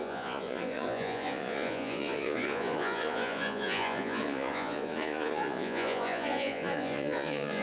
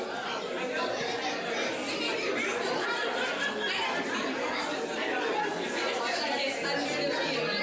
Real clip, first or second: second